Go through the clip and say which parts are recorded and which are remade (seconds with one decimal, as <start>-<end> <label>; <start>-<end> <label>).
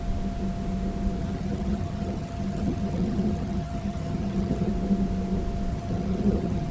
0.0-1.2 recorded; 1.2-4.7 remade; 4.7-5.7 recorded; 5.7-6.7 remade